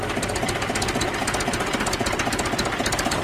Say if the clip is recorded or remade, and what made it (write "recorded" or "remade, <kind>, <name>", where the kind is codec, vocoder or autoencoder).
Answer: recorded